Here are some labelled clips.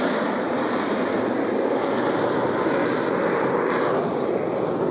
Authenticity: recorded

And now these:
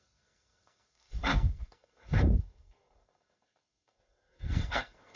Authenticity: remade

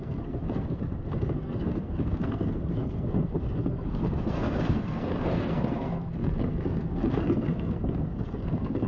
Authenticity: remade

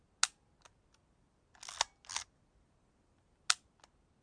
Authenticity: recorded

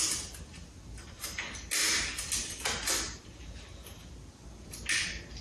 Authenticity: recorded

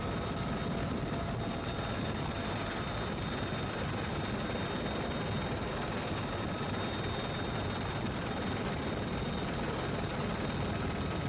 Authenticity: recorded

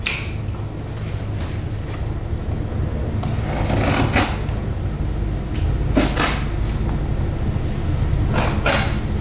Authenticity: recorded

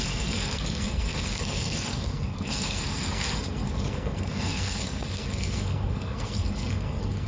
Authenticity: remade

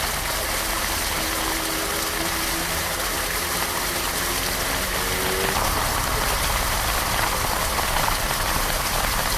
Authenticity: recorded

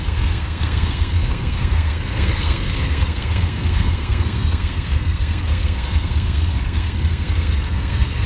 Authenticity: remade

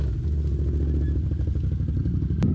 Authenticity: recorded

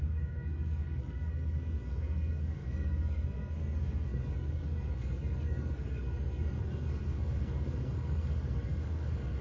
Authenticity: remade